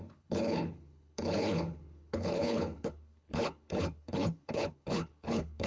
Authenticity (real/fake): fake